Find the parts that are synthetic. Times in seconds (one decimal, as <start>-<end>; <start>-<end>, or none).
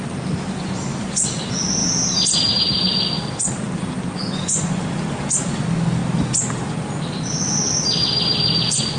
4.2-4.8